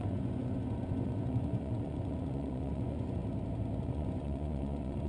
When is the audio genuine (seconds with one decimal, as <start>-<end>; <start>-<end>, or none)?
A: 3.2-3.8